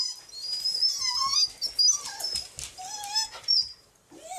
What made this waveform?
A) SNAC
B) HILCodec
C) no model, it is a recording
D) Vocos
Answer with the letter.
C